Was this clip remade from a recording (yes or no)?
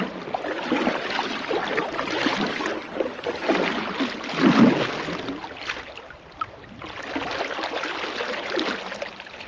no